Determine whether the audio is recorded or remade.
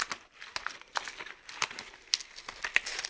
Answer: recorded